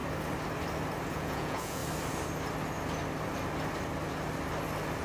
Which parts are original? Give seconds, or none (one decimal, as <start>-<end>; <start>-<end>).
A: 0.0-1.1; 1.8-5.0